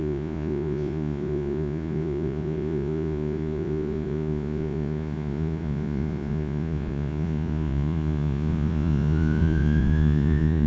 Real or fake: fake